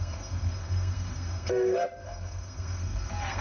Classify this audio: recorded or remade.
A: remade